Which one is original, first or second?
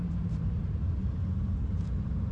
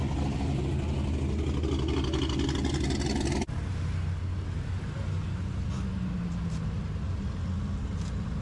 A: second